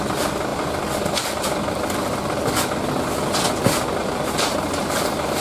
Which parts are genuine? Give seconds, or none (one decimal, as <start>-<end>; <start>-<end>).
0.0-4.0